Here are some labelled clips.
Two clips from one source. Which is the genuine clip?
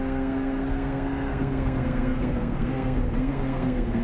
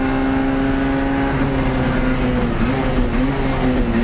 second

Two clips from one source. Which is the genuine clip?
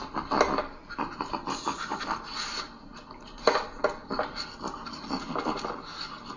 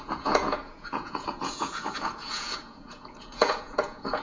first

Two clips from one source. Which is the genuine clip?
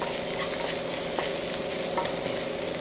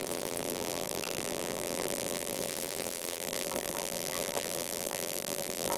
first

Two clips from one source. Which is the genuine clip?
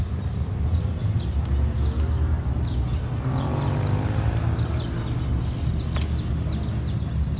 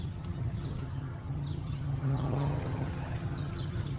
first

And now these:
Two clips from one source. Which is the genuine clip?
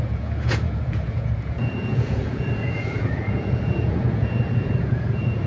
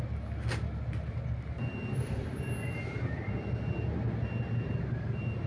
second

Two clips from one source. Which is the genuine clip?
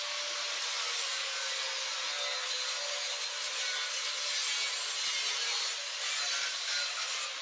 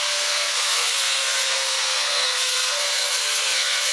first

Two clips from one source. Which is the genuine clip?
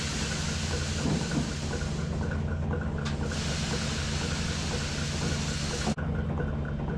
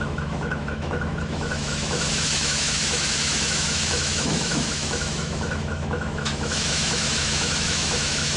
first